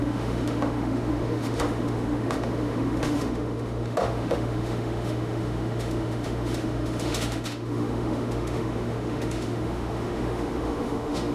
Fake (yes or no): yes